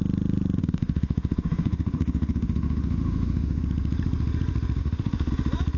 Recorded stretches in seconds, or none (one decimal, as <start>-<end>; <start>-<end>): 0.0-0.6; 3.6-4.8; 5.3-5.8